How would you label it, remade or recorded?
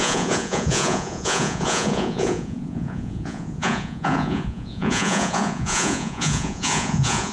remade